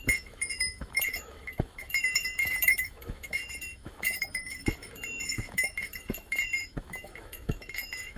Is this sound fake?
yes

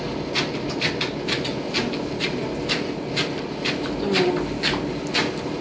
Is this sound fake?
no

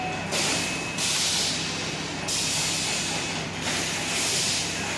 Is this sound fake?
no